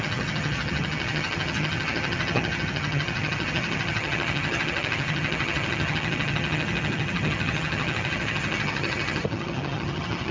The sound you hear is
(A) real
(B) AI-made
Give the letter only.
B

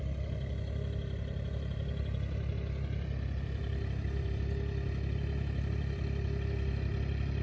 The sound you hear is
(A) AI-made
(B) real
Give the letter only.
B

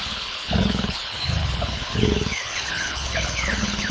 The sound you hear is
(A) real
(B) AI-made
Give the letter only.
B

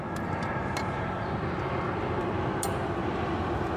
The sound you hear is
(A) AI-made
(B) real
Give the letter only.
B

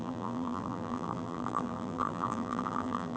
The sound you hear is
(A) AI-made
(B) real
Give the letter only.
A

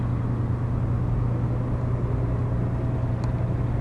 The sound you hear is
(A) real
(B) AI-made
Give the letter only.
A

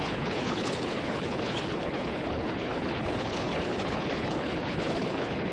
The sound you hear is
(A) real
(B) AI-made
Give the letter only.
B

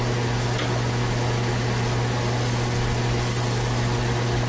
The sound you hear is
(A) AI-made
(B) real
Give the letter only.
B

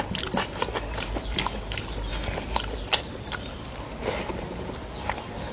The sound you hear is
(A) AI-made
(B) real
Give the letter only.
B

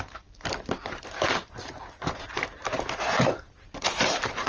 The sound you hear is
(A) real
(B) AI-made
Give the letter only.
B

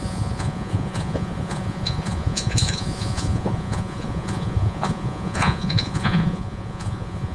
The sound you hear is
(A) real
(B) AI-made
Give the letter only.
B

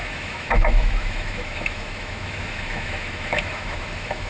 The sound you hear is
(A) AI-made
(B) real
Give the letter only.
A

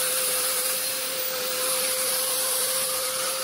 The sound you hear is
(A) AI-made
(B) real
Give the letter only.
A